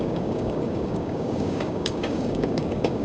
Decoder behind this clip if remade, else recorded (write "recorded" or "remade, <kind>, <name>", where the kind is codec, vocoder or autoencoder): remade, codec, DAC